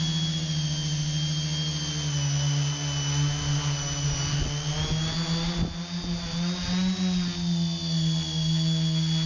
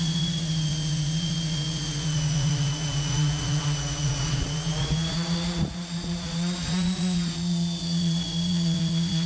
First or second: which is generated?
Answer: second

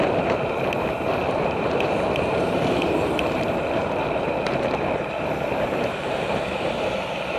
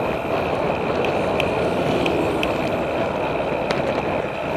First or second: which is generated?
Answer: first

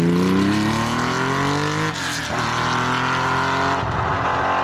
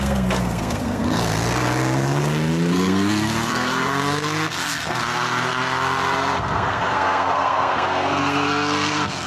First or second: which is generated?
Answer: second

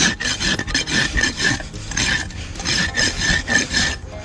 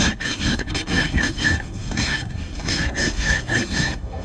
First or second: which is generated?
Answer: second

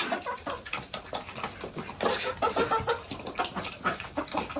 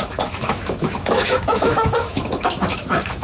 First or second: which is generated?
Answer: second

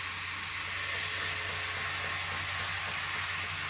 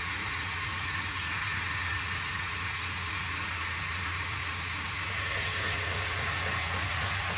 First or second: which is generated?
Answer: second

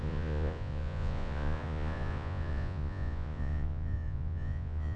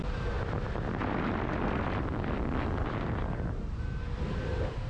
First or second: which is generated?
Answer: first